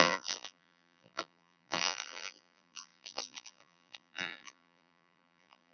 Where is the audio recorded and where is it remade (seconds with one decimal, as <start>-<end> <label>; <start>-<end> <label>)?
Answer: 0.0-5.7 remade